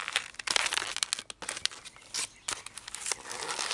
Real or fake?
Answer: real